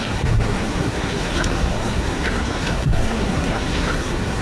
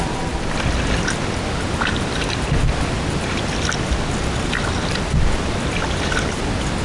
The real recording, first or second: second